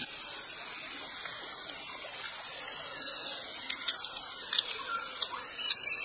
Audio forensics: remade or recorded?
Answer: recorded